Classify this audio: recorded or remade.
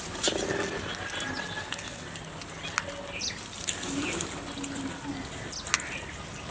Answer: recorded